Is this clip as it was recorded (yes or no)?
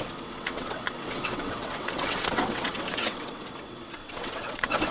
no